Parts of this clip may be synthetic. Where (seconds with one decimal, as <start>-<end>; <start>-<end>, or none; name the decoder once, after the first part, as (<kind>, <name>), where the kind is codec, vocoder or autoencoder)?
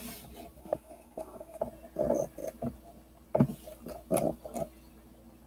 0.6-1.6 (codec, SNAC)